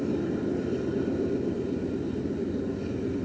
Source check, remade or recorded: recorded